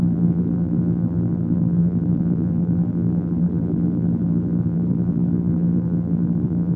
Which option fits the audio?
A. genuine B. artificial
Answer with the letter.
B